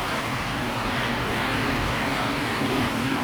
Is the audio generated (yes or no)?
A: yes